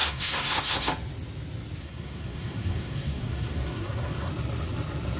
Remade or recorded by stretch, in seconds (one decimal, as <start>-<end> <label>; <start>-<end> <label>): 0.0-0.9 remade; 0.9-1.8 recorded; 1.8-4.3 remade; 4.3-5.2 recorded